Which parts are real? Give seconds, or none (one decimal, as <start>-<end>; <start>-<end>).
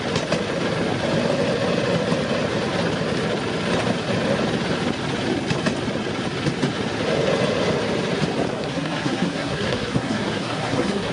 0.0-8.5